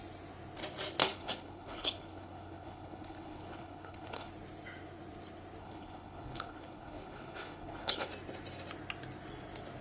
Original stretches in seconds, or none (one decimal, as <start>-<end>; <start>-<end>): 0.0-1.0; 4.3-5.6; 8.1-9.8